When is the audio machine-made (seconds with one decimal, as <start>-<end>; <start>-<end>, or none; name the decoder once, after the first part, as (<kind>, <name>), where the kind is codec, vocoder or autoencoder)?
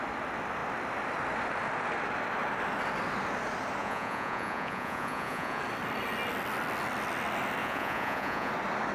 3.8-5.6 (vocoder, Vocos); 7.6-8.5